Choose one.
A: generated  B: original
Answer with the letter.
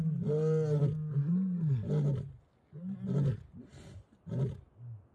B